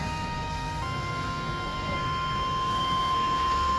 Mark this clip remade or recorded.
remade